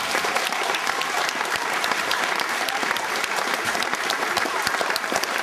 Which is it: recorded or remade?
remade